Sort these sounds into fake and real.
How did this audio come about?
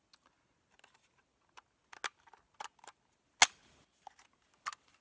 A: real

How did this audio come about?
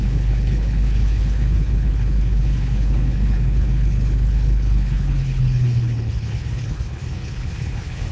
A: fake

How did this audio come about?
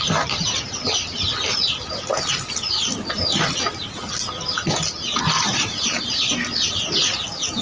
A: real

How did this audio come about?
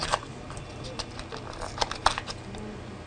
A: real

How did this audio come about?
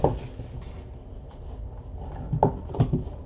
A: real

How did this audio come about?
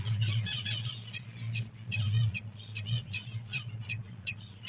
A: fake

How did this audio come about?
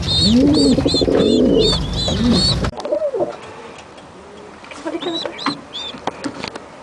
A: real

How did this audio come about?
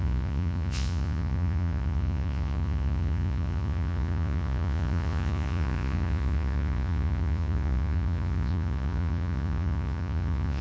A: fake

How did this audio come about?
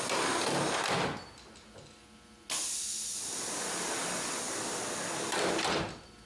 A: real